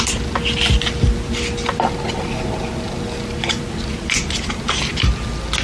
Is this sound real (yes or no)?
yes